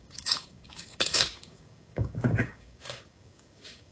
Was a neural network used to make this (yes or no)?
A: yes